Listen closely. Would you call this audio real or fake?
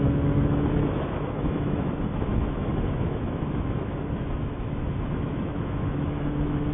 fake